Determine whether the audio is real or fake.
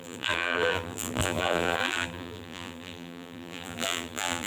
fake